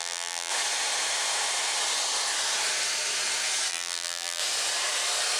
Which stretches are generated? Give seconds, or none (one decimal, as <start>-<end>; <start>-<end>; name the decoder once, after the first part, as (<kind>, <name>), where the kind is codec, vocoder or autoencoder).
0.0-0.5 (vocoder, BigVGAN v2); 3.7-4.4